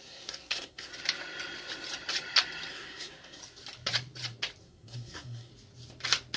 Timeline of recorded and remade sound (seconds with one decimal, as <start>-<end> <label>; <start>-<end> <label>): 0.0-0.9 remade; 0.9-2.7 recorded; 2.7-3.4 remade; 3.4-4.6 recorded; 4.6-5.5 remade; 5.5-6.4 recorded